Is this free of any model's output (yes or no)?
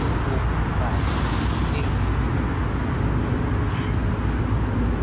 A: yes